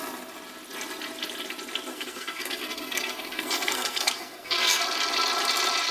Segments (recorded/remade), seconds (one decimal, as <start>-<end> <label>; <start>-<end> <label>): 0.0-1.9 recorded; 1.9-4.8 remade; 4.8-5.9 recorded